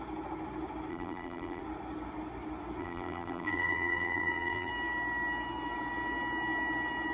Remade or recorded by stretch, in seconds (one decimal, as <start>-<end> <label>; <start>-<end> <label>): 0.0-0.9 recorded; 0.9-1.6 remade; 1.6-2.8 recorded; 2.8-4.7 remade; 4.7-7.1 recorded